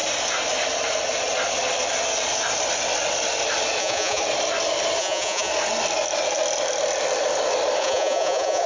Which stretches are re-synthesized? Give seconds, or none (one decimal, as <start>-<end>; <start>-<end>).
3.8-4.2; 5.0-5.5; 7.8-8.7